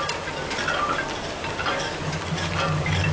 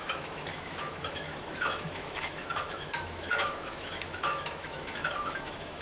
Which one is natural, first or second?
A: first